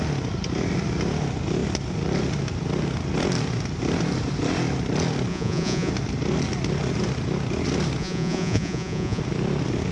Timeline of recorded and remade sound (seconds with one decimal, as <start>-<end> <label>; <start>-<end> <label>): 0.0-5.3 recorded; 5.3-5.9 remade; 5.9-8.0 recorded; 8.0-9.2 remade; 9.2-9.9 recorded